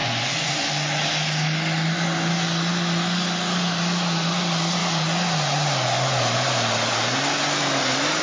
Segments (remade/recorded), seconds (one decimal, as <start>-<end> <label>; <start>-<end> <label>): 0.0-0.7 remade; 0.7-8.2 recorded